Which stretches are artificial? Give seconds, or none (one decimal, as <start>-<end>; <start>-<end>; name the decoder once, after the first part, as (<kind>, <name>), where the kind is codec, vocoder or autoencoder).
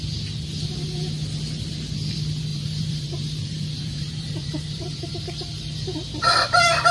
2.5-5.1 (vocoder, BigVGAN v2)